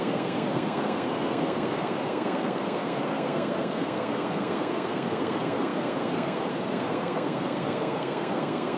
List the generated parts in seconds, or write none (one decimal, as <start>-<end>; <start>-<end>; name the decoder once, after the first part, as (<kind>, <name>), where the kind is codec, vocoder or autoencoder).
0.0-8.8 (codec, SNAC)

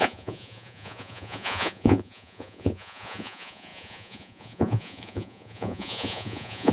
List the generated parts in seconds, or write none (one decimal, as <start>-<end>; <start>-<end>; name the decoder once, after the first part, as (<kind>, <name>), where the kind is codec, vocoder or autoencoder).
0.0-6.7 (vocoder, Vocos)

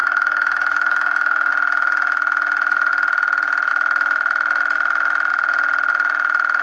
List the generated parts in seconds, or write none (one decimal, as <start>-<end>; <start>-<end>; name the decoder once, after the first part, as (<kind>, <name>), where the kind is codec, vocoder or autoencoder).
0.0-1.5 (autoencoder, DAC-VAE)

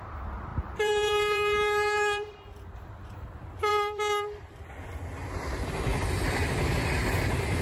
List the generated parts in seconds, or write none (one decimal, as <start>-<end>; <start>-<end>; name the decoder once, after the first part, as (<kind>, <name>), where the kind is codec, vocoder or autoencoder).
0.5-3.1 (vocoder, BigVGAN v2); 3.7-4.7; 5.9-6.6